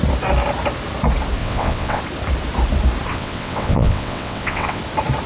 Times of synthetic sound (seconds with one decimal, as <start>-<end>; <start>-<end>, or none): 1.4-2.0; 3.1-4.8